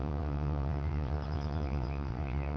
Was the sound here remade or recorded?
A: remade